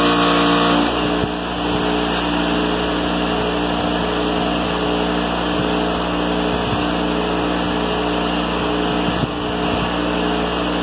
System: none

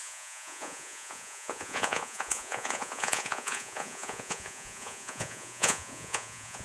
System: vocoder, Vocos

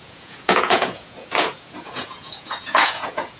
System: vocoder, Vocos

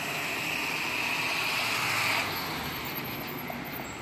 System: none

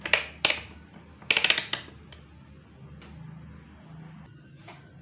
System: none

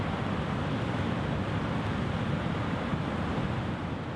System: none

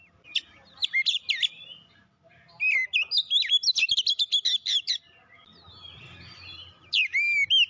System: none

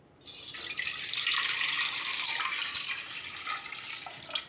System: none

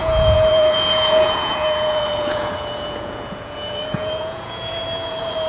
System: vocoder, Vocos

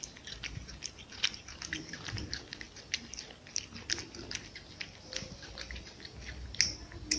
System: none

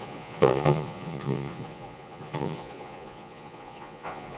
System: vocoder, Vocos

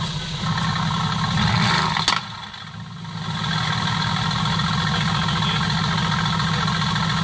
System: none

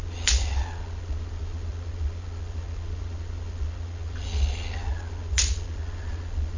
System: vocoder, Vocos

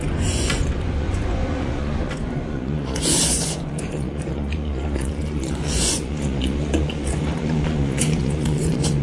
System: vocoder, Vocos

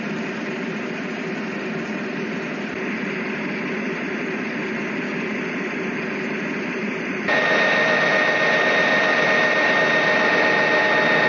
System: none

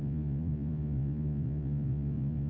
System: vocoder, Vocos